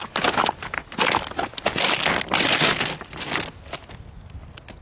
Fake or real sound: real